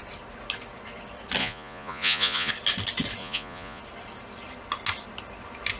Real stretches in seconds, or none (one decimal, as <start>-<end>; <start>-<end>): 0.0-1.4; 2.5-3.2; 3.8-5.8